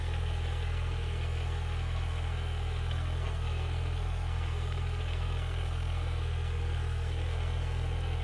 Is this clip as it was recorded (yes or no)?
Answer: no